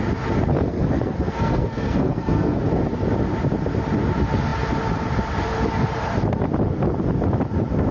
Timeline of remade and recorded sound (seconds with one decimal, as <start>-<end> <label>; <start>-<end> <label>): 0.0-0.7 recorded; 0.7-2.6 remade; 2.6-7.9 recorded